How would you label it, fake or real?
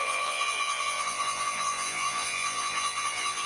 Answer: fake